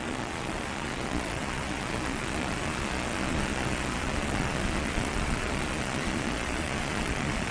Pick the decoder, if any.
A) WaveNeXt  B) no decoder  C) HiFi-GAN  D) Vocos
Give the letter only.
D